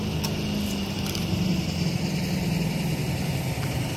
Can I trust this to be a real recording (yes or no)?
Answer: yes